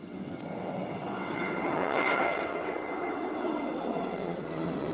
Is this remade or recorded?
remade